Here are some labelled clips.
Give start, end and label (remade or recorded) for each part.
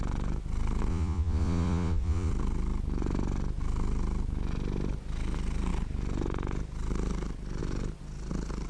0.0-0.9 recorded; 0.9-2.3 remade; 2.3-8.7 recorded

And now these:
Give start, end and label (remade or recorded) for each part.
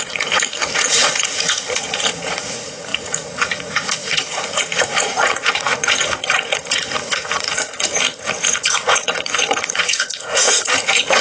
0.0-11.2 remade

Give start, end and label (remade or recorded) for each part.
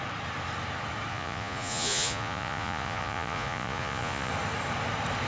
0.0-1.1 recorded; 1.1-4.3 remade; 4.3-5.3 recorded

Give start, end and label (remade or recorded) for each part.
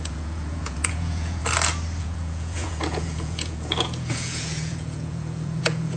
0.0-1.4 remade; 1.4-2.0 recorded; 2.0-6.0 remade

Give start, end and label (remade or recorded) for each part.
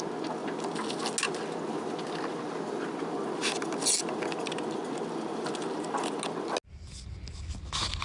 0.0-8.0 recorded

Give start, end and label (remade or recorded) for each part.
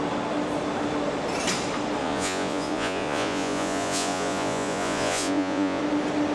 0.0-2.0 recorded; 2.0-5.8 remade; 5.8-6.3 recorded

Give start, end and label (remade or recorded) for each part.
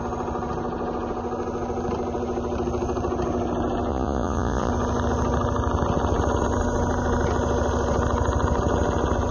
0.0-3.9 recorded; 3.9-4.7 remade; 4.7-9.3 recorded